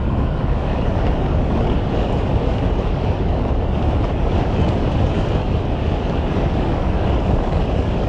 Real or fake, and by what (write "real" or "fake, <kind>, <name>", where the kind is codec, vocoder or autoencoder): fake, codec, DAC